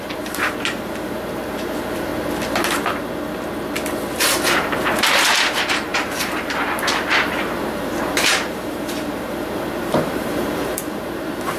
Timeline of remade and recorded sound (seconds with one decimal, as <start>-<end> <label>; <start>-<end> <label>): 0.0-2.1 remade; 2.1-4.1 recorded; 4.1-11.6 remade